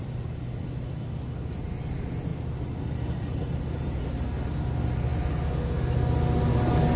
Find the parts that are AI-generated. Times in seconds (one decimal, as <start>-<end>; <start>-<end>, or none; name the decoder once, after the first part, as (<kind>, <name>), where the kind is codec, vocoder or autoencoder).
none